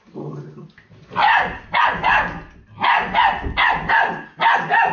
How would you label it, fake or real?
real